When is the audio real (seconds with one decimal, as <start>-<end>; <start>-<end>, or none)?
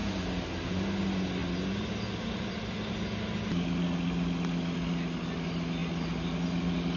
0.0-7.0